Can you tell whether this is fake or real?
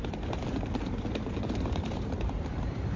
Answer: fake